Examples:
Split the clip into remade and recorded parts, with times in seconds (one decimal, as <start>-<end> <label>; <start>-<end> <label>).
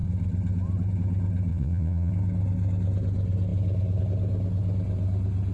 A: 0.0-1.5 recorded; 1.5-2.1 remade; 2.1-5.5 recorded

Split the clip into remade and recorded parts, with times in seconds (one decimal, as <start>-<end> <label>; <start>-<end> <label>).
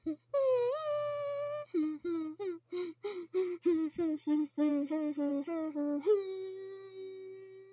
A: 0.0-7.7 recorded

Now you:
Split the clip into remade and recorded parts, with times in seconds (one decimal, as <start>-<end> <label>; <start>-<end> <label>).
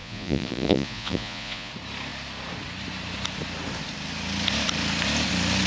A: 0.0-1.7 remade; 1.7-5.7 recorded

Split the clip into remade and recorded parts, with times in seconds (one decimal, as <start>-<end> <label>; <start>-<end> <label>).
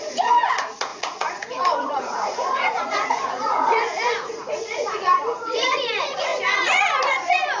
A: 0.0-7.6 remade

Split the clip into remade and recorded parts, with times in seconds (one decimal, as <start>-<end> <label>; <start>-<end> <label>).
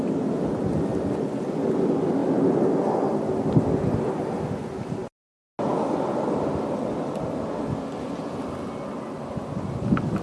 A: 0.0-10.2 recorded